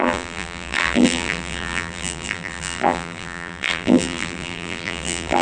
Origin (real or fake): fake